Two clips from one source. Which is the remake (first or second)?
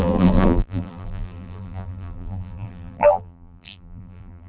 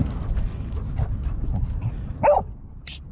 first